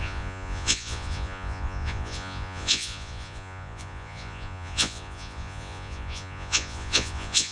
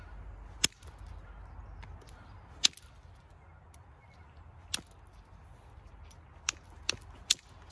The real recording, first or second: second